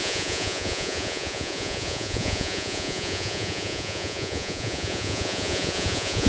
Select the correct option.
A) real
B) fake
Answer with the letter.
B